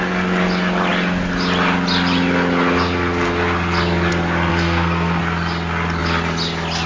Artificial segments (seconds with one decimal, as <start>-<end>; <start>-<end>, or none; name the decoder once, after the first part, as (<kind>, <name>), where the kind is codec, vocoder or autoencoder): 4.5-5.2 (codec, SNAC)